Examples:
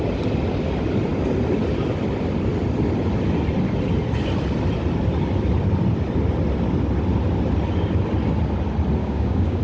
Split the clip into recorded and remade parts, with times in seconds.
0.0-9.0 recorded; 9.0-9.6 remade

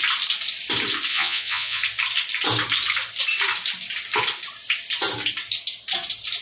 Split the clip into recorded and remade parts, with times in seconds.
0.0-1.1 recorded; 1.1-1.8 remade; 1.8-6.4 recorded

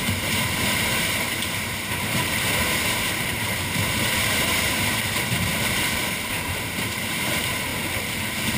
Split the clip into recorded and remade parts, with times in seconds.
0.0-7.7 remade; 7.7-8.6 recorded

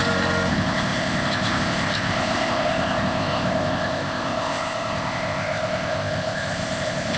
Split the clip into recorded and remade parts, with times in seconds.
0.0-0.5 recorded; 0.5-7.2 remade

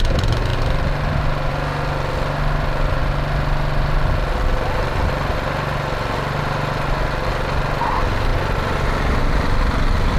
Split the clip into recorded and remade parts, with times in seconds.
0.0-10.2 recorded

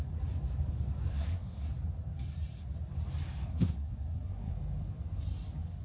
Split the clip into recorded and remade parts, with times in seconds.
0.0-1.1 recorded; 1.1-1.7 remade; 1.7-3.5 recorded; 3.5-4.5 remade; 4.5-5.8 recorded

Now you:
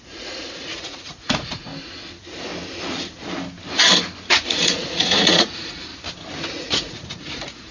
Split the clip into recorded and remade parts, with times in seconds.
0.0-1.7 remade; 1.7-4.3 recorded; 4.3-5.9 remade; 5.9-6.6 recorded; 6.6-7.7 remade